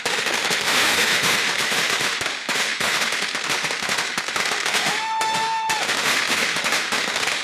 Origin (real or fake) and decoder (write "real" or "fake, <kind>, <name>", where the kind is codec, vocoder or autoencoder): fake, autoencoder, DAC-VAE